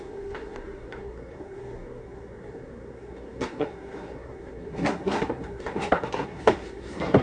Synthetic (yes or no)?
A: yes